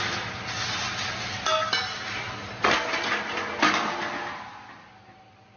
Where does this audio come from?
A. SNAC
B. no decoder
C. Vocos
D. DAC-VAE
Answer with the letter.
B